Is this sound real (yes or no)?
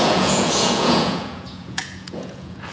no